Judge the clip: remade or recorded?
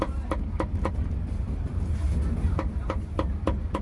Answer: recorded